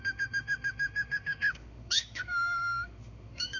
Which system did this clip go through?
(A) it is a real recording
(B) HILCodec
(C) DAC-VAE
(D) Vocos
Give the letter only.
C